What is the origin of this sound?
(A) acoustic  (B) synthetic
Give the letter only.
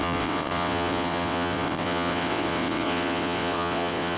B